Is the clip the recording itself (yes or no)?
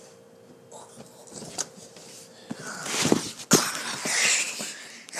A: yes